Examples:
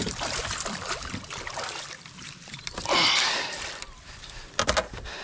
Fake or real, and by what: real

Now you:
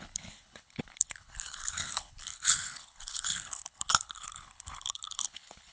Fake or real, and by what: fake, codec, HILCodec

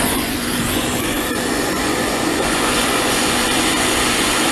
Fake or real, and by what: fake, vocoder, Vocos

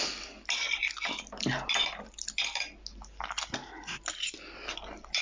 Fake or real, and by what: real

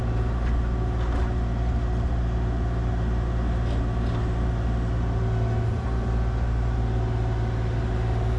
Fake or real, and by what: real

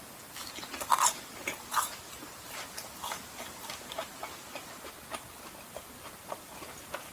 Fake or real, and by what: real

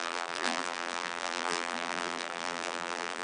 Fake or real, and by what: fake, vocoder, BigVGAN v2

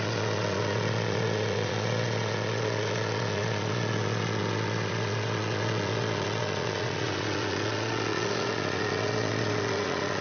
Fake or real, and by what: fake, vocoder, Vocos